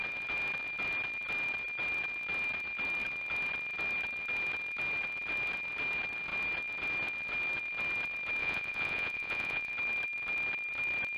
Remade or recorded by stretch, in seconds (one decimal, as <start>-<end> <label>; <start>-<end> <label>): 0.0-8.4 recorded; 8.4-9.7 remade; 9.7-11.2 recorded